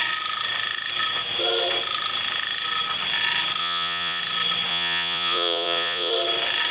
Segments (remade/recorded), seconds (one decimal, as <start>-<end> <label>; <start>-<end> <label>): 0.0-3.6 recorded; 3.6-4.2 remade; 4.2-4.7 recorded; 4.7-6.1 remade; 6.1-6.7 recorded